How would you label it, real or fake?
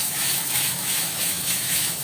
fake